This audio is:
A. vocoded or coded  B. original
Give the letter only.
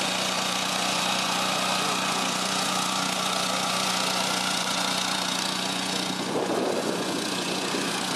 A